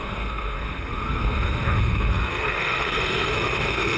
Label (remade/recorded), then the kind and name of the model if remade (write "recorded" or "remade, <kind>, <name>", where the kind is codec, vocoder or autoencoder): remade, codec, SNAC